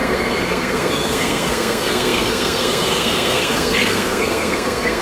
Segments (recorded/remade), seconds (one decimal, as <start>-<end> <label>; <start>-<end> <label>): 0.0-5.0 remade